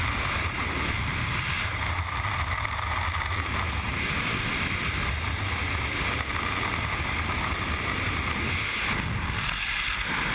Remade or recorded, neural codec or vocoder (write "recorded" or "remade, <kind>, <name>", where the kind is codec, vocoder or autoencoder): recorded